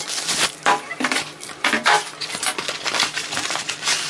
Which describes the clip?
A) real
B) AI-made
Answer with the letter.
B